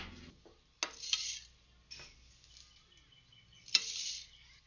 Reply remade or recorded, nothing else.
recorded